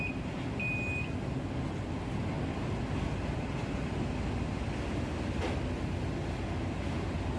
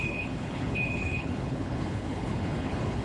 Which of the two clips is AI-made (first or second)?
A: second